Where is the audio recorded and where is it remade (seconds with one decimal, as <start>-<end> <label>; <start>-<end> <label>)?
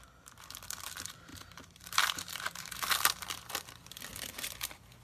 0.0-1.3 recorded; 1.3-3.5 remade; 3.5-5.0 recorded